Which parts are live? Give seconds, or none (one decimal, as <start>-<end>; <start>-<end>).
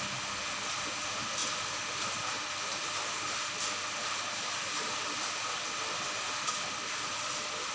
0.0-7.7